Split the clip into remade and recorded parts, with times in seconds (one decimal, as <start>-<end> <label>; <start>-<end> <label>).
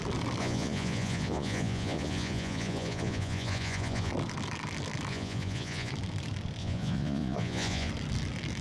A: 0.0-0.4 recorded; 0.4-4.1 remade; 4.1-5.1 recorded; 5.1-5.9 remade; 5.9-6.6 recorded; 6.6-7.9 remade; 7.9-8.6 recorded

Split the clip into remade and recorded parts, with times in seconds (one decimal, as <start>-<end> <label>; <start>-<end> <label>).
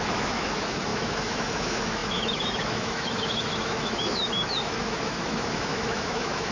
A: 0.0-6.5 remade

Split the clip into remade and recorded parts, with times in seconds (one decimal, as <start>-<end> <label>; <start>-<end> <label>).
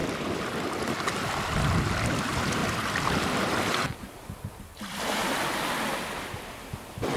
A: 0.0-7.2 recorded